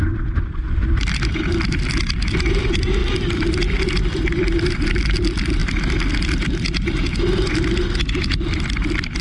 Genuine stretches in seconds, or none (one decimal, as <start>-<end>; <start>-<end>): 5.6-8.4